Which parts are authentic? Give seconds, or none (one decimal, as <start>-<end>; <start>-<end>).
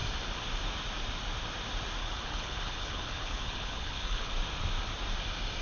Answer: 0.0-2.0; 4.3-5.6